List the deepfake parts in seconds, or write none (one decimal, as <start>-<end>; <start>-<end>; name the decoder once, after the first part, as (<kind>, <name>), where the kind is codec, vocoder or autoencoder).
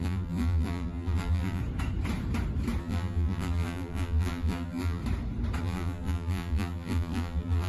0.0-1.6 (vocoder, BigVGAN v2); 2.8-5.0; 5.6-7.7